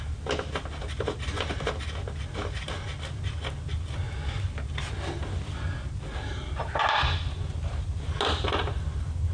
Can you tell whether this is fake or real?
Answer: real